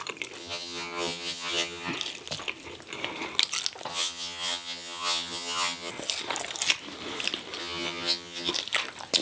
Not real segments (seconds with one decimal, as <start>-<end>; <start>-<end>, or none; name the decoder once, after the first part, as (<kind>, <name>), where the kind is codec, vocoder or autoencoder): 0.4-1.9 (vocoder, HiFi-GAN); 3.9-5.9; 7.6-8.5